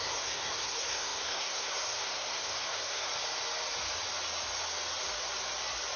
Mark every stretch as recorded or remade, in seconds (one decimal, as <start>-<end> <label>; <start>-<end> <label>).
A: 0.0-3.1 remade; 3.1-6.0 recorded